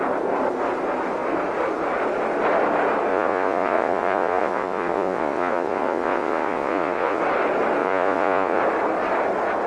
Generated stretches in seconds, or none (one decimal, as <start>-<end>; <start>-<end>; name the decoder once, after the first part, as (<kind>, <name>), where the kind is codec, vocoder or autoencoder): 3.1-7.2 (vocoder, Vocos); 7.8-8.6